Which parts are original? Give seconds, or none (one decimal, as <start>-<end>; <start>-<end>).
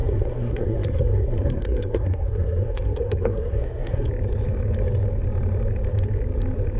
4.1-6.8